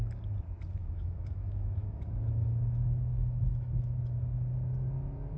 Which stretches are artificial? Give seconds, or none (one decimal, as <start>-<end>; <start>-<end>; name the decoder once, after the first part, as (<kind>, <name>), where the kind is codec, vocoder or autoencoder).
0.8-4.0 (autoencoder, DAC-VAE)